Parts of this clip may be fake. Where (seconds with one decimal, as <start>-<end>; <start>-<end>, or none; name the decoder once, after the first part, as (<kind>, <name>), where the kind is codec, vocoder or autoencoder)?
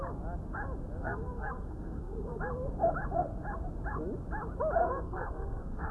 1.0-2.4 (codec, SNAC); 4.8-5.9